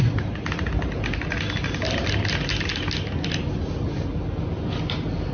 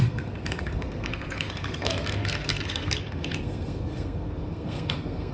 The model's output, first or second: second